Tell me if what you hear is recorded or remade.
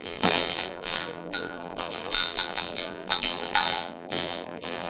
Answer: remade